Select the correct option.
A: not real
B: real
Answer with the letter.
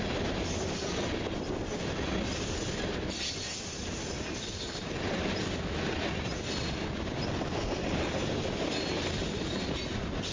B